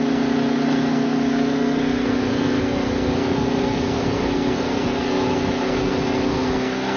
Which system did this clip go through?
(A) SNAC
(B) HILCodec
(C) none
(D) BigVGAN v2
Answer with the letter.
A